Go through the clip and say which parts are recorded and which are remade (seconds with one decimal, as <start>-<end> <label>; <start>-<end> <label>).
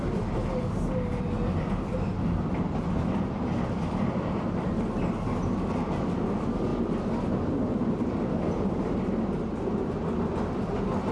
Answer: 0.0-11.1 recorded